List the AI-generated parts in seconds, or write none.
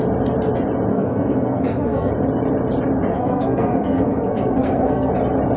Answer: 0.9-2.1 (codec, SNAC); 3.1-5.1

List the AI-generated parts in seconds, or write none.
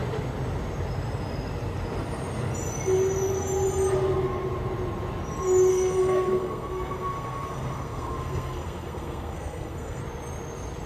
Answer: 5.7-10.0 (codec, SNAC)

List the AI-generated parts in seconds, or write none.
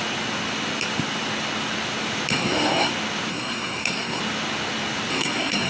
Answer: 2.3-2.9 (codec, SNAC); 3.3-4.2; 5.1-5.7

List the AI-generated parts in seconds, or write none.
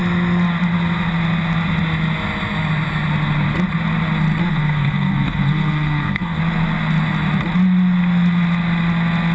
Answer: 4.5-6.4 (codec, SNAC)